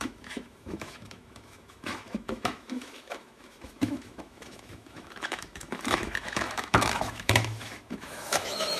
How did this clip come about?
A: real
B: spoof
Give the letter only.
B